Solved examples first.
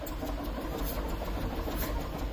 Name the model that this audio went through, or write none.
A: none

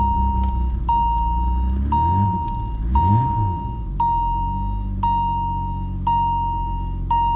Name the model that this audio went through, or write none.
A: none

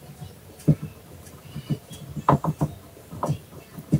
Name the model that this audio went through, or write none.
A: vocoder, BigVGAN v2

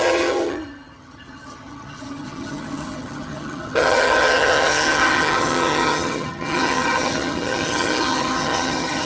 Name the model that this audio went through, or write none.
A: vocoder, HiFi-GAN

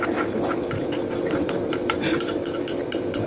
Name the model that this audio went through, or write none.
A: none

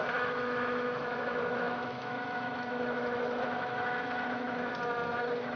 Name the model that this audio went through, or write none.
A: autoencoder, DAC-VAE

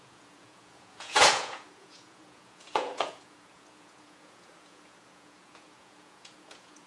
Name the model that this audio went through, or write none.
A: vocoder, Vocos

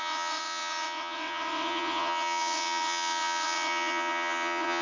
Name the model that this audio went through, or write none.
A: vocoder, WaveNeXt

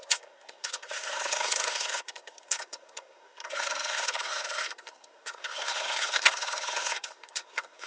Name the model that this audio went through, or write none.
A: codec, SNAC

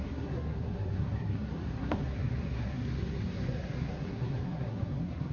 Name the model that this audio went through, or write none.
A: codec, SNAC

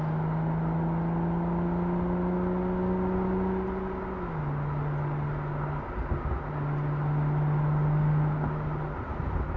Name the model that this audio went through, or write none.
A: none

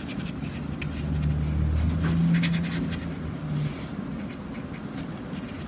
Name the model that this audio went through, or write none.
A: none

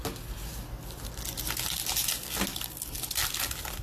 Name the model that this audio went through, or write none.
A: none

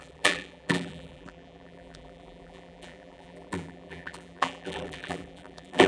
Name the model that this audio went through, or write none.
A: vocoder, BigVGAN v2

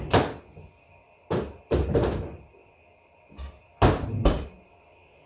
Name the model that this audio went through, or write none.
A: none